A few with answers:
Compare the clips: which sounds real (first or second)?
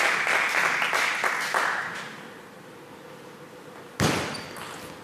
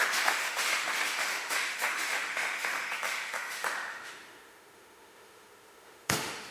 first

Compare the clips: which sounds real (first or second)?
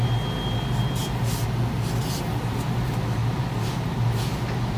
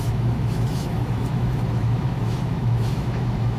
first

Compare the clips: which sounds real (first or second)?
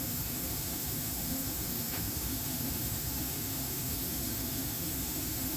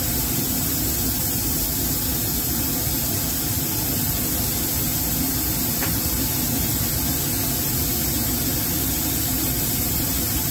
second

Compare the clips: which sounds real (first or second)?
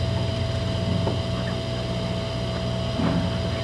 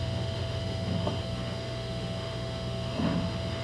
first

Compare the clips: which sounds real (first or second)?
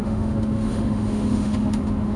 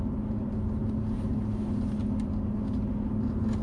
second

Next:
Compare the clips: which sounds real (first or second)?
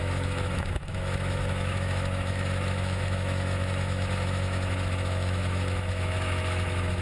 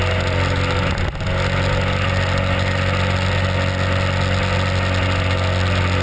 second